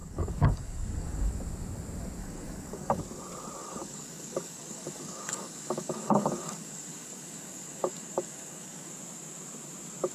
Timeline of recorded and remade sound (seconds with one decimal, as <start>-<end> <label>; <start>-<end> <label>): 0.0-1.3 remade; 1.3-2.2 recorded; 2.2-3.0 remade; 3.0-3.6 recorded; 3.6-8.9 remade; 8.9-10.1 recorded